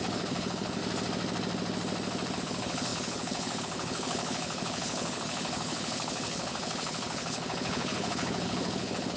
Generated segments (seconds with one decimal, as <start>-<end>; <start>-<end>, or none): 0.0-0.8; 2.4-9.2